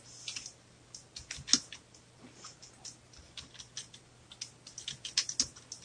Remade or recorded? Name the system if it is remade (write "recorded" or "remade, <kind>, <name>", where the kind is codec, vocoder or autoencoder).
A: recorded